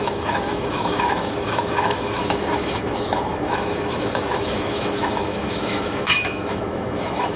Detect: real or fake fake